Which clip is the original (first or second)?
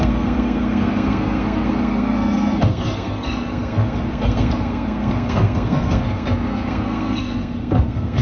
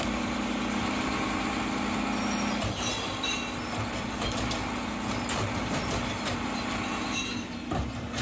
second